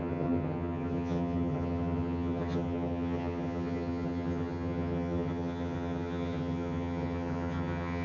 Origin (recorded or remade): remade